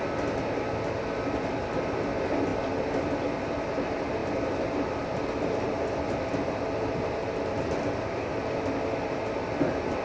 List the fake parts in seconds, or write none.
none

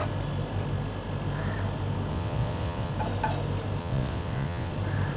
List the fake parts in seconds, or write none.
2.1-2.9 (vocoder, WaveNeXt); 3.8-4.7

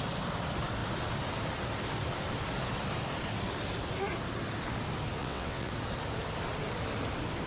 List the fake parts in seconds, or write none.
5.2-5.7 (vocoder, WaveNeXt)

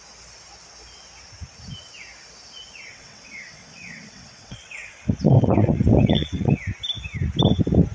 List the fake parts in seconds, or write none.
2.9-6.6 (vocoder, WaveNeXt)

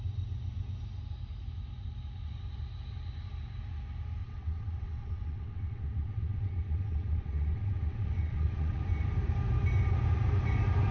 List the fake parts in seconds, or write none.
4.2-8.8 (vocoder, WaveNeXt)